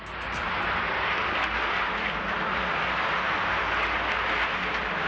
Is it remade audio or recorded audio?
recorded